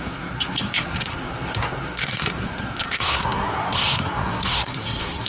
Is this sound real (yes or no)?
no